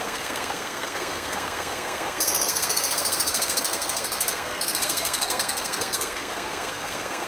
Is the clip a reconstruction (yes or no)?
yes